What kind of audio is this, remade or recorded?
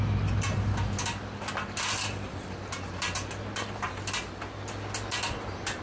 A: recorded